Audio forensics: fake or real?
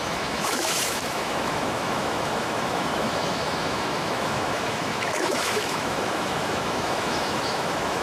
fake